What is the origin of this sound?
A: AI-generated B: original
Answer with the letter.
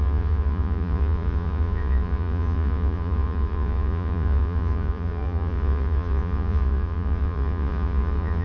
A